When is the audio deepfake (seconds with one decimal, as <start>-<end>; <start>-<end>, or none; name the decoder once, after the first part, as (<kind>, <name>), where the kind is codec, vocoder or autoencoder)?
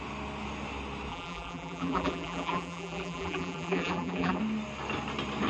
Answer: 1.1-4.4 (vocoder, BigVGAN v2)